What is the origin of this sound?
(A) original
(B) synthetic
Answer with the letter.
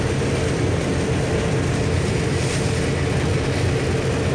A